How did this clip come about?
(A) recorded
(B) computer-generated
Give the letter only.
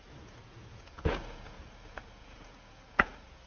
B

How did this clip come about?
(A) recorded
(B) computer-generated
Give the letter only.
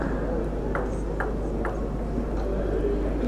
A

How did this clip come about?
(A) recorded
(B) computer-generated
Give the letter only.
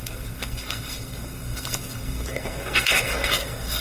B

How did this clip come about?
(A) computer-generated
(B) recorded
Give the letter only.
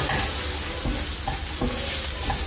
B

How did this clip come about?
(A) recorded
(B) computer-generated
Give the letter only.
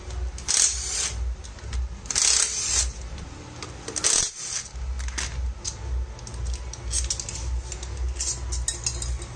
A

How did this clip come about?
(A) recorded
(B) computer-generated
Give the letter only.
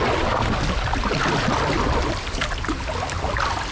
A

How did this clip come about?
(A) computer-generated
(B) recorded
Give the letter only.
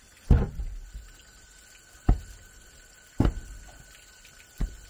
B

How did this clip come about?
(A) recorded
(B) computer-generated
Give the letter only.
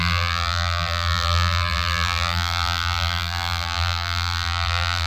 B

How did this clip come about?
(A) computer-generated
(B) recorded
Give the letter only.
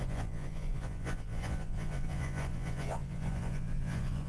A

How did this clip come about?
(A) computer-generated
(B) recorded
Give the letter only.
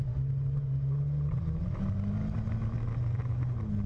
B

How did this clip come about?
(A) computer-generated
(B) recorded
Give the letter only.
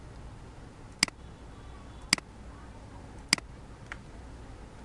B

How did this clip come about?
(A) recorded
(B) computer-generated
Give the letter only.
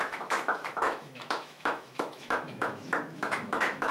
B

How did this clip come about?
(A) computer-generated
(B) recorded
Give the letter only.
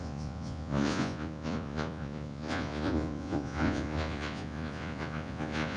A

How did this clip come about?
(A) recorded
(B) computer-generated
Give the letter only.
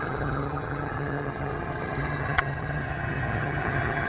B